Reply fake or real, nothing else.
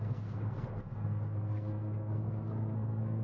fake